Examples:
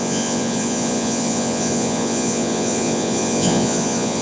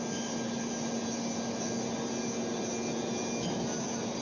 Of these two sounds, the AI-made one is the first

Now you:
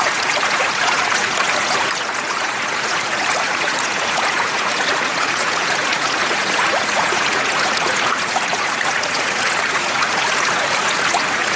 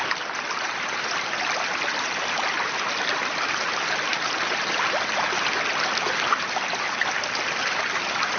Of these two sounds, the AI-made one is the first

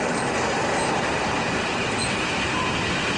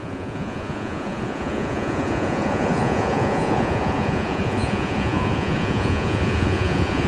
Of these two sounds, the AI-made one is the second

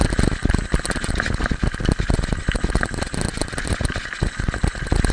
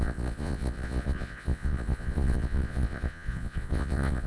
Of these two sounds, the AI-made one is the second